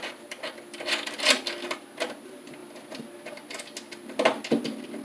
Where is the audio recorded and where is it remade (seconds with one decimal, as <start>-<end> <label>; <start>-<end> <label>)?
0.0-5.0 recorded